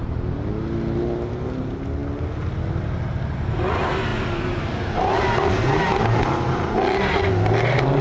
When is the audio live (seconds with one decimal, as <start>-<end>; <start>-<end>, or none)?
0.0-8.0